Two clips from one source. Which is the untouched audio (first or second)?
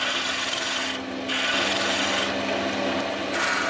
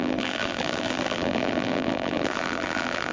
first